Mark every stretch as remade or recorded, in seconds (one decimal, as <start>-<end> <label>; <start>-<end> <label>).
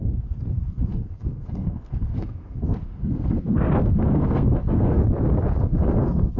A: 0.0-5.0 remade; 5.0-5.6 recorded; 5.6-6.4 remade